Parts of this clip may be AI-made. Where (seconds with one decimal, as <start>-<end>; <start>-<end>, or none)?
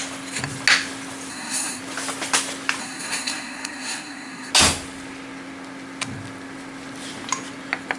1.3-1.8; 2.8-4.5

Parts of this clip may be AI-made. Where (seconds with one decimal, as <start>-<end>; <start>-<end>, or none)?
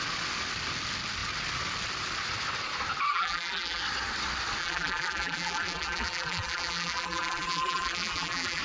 3.1-3.8; 4.6-8.6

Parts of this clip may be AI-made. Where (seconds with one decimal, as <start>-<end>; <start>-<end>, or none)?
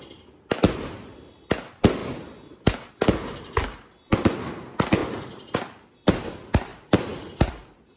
5.0-6.3; 6.7-7.3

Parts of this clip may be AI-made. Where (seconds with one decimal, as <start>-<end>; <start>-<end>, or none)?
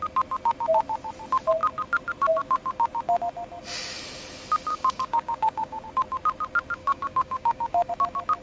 4.7-5.8; 6.8-7.9